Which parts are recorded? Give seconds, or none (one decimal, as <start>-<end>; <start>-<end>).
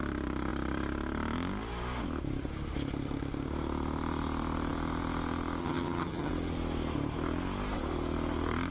0.0-5.6; 6.3-8.7